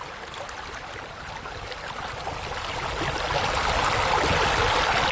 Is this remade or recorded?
recorded